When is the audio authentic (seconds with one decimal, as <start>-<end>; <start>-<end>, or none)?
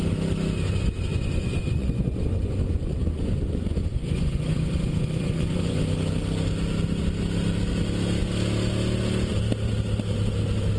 0.0-1.1; 5.8-10.8